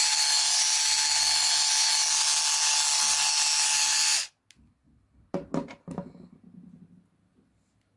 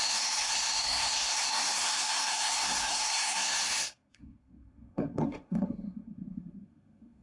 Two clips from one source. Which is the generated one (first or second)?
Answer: second